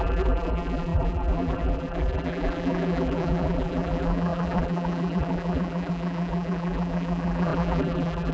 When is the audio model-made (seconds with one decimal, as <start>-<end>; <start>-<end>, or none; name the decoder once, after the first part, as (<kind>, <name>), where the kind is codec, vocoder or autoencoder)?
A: 0.0-8.3 (vocoder, BigVGAN v2)